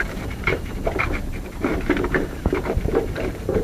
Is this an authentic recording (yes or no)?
no